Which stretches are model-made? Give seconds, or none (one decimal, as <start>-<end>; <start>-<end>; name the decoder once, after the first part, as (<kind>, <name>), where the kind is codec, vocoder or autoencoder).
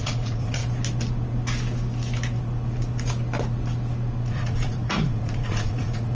0.0-0.6 (vocoder, Vocos); 4.3-6.1